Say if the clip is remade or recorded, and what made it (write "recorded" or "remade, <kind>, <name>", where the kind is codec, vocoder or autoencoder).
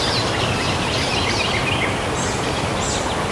recorded